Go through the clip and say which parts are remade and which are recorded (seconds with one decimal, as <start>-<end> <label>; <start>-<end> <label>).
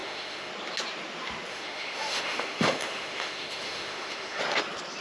0.0-0.5 remade; 0.5-1.5 recorded; 1.5-4.4 remade; 4.4-5.0 recorded